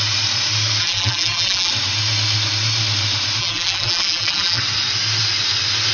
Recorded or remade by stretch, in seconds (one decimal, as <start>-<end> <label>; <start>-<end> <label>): 0.0-0.8 recorded; 0.8-1.7 remade; 1.7-3.4 recorded; 3.4-4.6 remade; 4.6-5.9 recorded